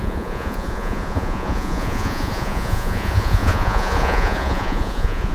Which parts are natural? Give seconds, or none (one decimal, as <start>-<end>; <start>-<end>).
none

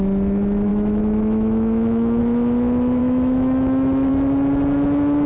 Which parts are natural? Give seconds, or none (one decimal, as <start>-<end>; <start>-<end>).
0.0-0.7; 2.2-3.0; 4.1-5.3

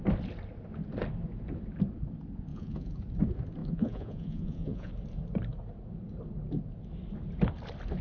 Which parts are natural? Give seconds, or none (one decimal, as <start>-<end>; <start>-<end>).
0.0-2.5; 3.0-3.6; 4.9-8.0

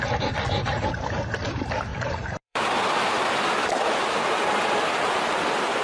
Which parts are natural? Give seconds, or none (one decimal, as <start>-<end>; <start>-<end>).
0.0-1.9; 3.3-5.8

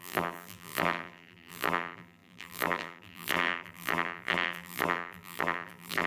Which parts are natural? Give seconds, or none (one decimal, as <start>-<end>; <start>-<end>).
none

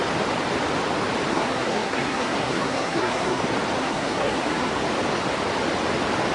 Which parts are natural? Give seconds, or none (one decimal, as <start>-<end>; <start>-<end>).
0.0-1.3; 3.4-3.8; 4.7-6.3